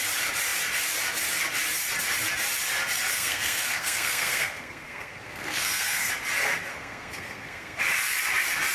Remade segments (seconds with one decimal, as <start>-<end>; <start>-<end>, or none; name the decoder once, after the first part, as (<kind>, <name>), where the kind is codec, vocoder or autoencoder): 3.1-6.1 (codec, SNAC); 6.7-7.8